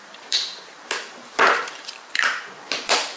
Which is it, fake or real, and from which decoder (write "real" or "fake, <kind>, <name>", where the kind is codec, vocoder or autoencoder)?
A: fake, vocoder, BigVGAN v2